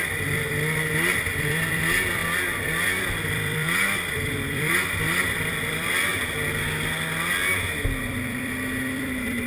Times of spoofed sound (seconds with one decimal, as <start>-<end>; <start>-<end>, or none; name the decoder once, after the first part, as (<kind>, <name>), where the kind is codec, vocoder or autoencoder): 0.0-6.1 (vocoder, BigVGAN v2); 8.0-9.5